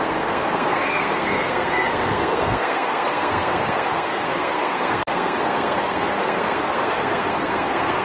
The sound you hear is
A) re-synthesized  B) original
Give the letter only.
A